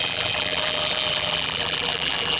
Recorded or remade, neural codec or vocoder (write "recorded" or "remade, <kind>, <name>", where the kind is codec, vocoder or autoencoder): remade, vocoder, BigVGAN v2